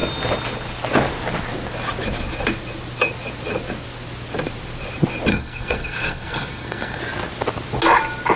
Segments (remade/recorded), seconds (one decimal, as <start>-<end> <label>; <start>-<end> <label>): 0.0-5.3 recorded; 5.3-7.0 remade; 7.0-8.3 recorded